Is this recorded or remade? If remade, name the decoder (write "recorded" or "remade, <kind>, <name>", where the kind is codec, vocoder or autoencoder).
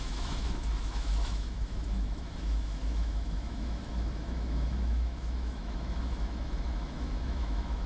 remade, autoencoder, DAC-VAE